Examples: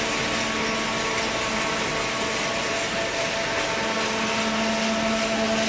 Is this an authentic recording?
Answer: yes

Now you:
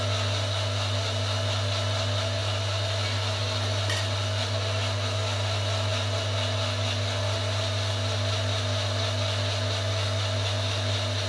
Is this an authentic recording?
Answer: yes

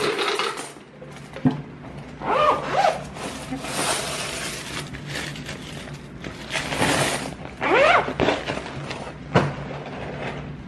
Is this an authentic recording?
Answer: yes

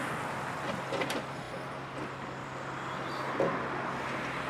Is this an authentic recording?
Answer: yes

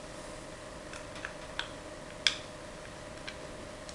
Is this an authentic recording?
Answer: yes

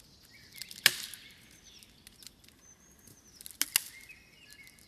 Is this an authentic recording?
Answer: yes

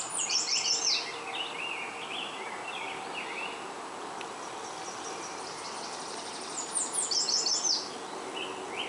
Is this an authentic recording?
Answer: yes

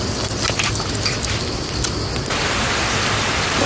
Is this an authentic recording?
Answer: yes